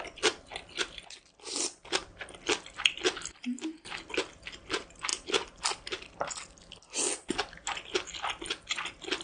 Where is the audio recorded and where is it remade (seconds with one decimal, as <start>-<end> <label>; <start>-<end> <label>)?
0.0-9.2 recorded